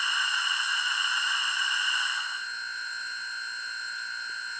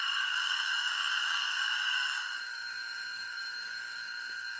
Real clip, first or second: first